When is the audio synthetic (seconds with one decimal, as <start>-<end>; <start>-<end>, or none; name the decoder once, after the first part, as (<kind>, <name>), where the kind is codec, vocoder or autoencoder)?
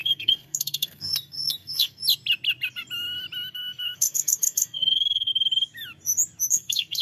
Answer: 0.0-2.0 (codec, SNAC); 3.5-5.3; 6.5-7.0